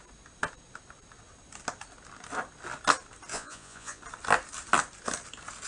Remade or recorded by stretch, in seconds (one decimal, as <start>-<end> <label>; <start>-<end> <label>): 0.0-3.3 recorded; 3.3-4.0 remade; 4.0-5.7 recorded